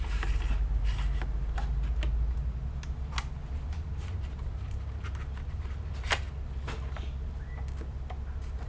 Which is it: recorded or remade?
recorded